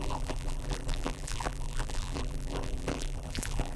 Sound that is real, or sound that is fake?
fake